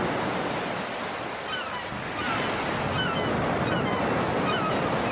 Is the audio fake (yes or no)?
no